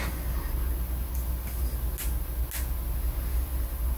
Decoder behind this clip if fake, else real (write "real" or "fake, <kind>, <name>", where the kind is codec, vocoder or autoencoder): real